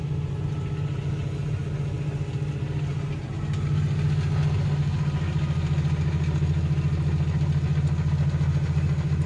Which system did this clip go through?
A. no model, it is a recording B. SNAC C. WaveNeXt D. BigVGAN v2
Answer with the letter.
A